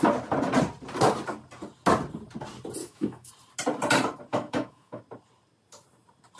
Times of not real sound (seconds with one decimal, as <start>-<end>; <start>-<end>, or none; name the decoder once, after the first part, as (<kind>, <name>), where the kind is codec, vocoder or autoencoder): 2.8-3.3 (autoencoder, DAC-VAE); 4.3-5.0